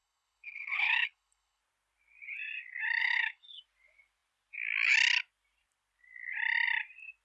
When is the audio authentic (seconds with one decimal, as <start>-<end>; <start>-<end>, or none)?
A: 1.6-3.0; 3.6-7.2